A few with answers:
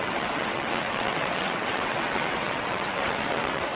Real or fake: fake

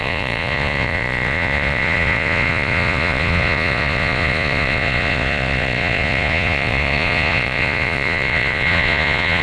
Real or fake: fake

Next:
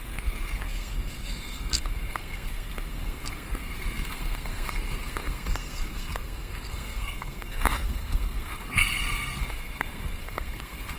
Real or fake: fake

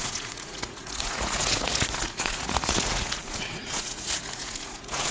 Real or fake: fake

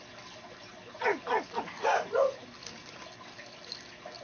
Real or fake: real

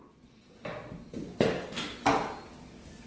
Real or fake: real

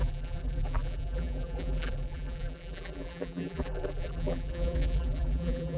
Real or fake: fake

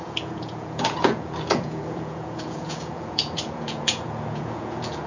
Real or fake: fake